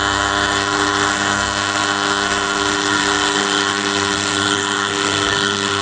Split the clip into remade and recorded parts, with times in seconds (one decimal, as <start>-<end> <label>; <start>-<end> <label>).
0.0-5.8 remade